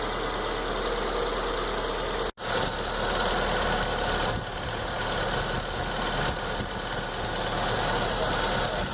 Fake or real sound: real